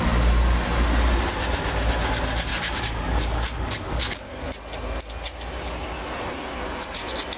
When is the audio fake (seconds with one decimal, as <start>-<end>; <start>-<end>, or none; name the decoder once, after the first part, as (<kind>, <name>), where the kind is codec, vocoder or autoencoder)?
2.5-4.5 (codec, DAC)